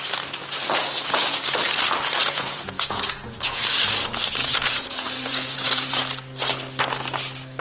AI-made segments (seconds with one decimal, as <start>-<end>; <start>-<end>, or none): 0.4-1.4; 2.2-3.6; 4.4-6.0